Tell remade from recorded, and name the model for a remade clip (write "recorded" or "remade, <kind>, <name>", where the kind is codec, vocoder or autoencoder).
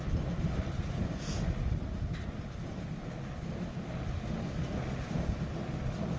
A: recorded